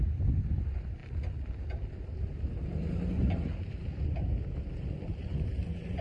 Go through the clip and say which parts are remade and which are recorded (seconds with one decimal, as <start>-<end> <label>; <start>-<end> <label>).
0.0-6.0 recorded